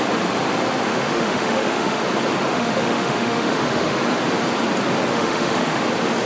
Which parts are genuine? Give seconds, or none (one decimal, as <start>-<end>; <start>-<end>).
0.0-0.9; 2.0-2.5; 4.0-5.1; 5.8-6.3